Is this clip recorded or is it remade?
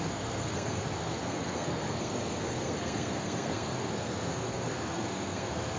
remade